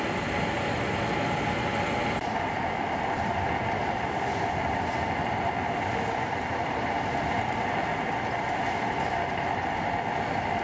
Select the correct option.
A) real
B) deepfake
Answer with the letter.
A